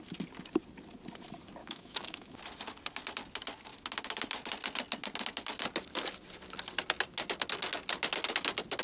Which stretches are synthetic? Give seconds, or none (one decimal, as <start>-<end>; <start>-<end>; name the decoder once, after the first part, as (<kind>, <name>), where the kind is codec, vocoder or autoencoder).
1.6-2.4 (autoencoder, DAC-VAE)